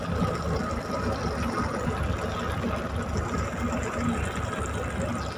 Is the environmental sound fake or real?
real